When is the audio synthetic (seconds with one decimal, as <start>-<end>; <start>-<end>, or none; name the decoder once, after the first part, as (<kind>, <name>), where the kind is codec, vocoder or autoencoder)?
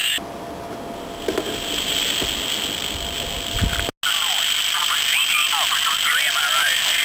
none